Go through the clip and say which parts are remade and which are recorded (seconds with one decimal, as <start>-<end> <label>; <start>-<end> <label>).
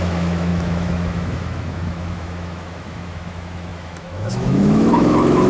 0.0-5.5 remade